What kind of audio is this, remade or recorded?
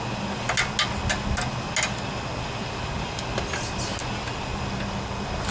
recorded